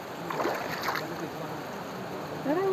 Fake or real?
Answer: real